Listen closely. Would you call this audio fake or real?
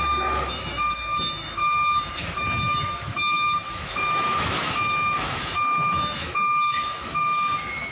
fake